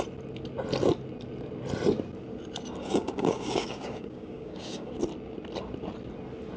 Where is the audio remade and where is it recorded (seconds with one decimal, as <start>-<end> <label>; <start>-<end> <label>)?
0.0-2.8 recorded; 2.8-4.9 remade; 4.9-6.6 recorded